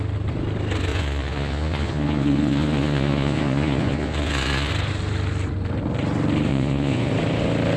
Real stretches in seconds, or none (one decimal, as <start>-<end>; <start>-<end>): 0.0-0.9; 4.7-6.5; 7.1-7.8